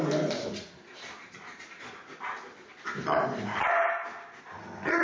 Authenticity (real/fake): real